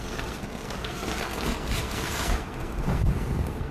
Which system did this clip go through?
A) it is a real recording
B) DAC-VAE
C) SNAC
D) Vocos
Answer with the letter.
C